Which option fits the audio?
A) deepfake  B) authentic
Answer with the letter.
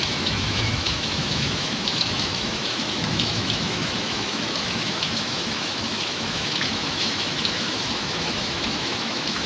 A